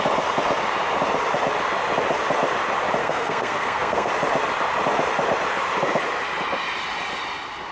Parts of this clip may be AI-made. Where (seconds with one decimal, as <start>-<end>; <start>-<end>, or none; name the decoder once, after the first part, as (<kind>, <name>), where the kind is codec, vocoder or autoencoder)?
3.0-4.1 (codec, SNAC)